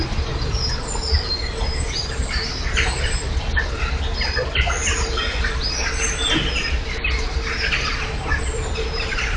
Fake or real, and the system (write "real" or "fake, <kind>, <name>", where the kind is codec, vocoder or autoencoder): real